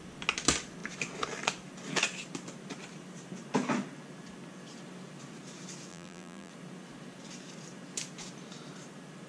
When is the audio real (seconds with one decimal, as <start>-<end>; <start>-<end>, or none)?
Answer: 0.0-5.9; 6.5-9.3